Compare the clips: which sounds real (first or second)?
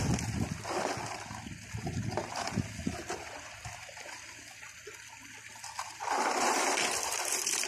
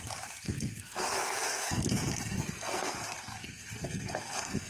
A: first